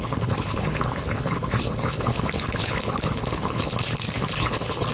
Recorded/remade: remade